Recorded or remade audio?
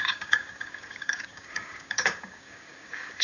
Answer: remade